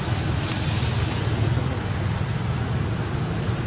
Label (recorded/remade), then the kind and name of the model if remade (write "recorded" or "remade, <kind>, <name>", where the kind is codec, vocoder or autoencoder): recorded